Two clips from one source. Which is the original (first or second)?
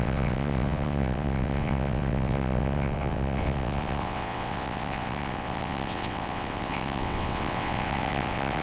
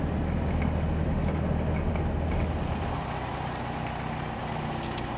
second